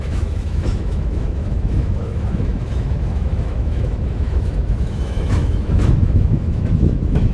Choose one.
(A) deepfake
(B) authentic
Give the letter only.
A